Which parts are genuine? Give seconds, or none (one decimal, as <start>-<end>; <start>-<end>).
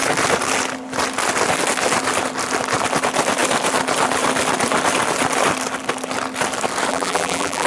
0.0-6.9